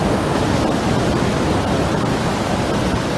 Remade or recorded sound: recorded